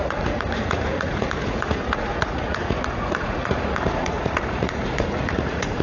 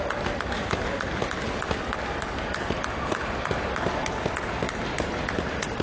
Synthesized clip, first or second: first